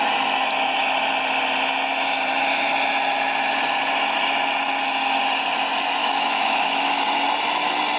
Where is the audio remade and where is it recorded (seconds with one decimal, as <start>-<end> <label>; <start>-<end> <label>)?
0.0-6.0 recorded; 6.0-7.0 remade; 7.0-8.0 recorded